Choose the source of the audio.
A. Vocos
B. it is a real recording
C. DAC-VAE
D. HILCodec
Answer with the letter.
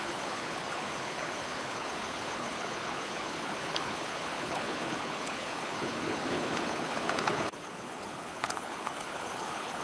D